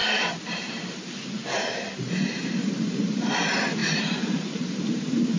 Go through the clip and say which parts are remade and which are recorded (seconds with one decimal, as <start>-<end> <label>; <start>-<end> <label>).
0.0-3.2 remade; 3.2-3.8 recorded; 3.8-4.8 remade; 4.8-5.4 recorded